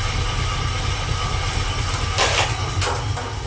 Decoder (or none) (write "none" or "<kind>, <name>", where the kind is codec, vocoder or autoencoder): none